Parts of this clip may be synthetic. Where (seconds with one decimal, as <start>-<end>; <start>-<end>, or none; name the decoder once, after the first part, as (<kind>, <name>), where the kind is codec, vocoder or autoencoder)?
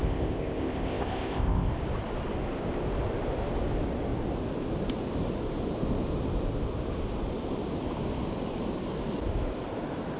0.0-1.7 (codec, ZipCodec)